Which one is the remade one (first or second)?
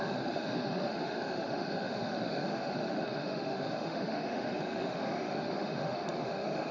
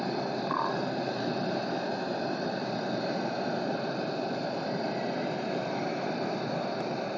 first